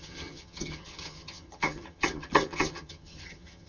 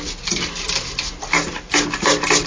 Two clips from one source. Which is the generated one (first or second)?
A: first